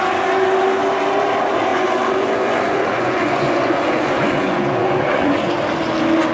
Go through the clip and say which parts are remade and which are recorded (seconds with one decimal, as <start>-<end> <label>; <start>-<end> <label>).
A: 0.0-1.7 recorded; 1.7-5.5 remade; 5.5-6.3 recorded